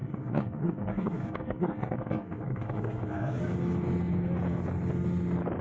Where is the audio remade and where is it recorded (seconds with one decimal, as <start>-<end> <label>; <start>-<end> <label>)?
0.0-3.4 remade; 3.4-5.6 recorded